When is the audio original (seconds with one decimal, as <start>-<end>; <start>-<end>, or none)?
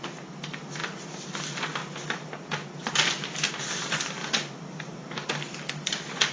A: 0.0-6.3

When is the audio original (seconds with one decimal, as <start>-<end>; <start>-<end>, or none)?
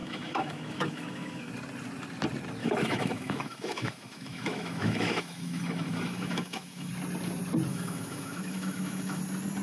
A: 1.5-2.6; 6.9-7.7; 9.2-9.6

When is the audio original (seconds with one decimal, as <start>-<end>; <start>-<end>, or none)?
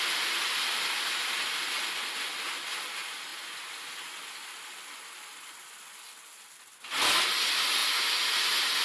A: 0.0-8.8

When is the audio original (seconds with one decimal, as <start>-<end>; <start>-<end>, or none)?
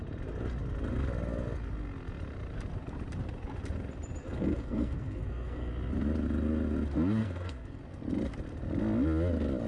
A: 0.0-4.2; 5.7-7.2; 7.8-9.7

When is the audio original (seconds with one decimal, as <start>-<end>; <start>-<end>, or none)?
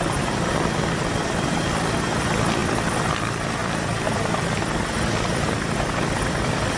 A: none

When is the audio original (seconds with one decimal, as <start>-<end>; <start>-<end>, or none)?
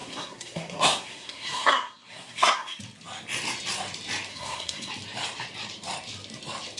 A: 2.8-4.3; 4.9-6.8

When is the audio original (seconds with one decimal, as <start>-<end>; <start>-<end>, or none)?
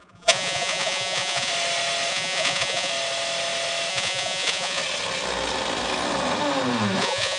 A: 1.5-2.1; 2.9-3.9; 4.8-7.0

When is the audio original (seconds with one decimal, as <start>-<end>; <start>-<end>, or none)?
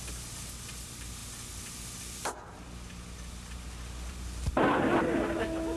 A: 0.0-5.8